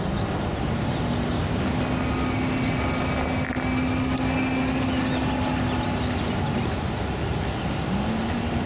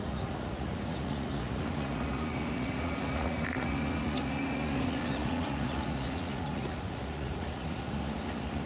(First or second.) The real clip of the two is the first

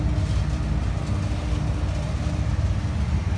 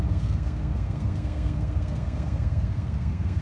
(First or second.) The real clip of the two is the first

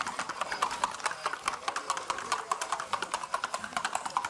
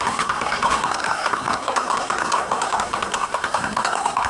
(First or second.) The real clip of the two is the first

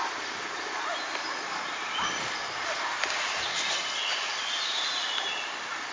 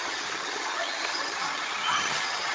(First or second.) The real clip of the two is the first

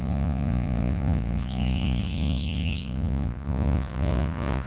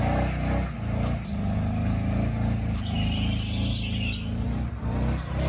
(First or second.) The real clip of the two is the second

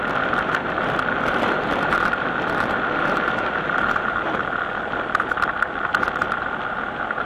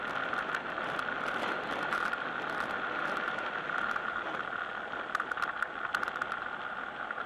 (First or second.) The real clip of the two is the second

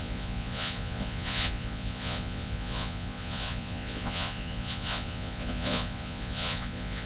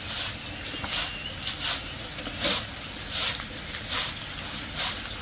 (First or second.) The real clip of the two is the second